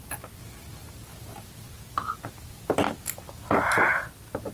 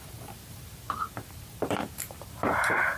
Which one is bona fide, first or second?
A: first